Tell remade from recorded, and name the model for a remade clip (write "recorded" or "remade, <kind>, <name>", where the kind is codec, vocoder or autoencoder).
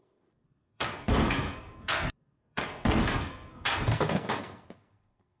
remade, codec, SNAC